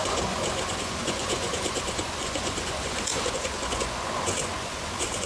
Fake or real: fake